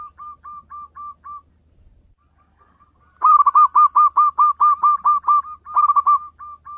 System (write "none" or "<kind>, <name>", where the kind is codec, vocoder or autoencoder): none